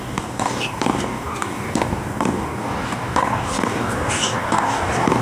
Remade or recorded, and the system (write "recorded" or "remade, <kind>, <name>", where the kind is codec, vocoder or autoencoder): remade, codec, DAC